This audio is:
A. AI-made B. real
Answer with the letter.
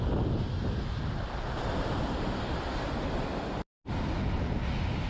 B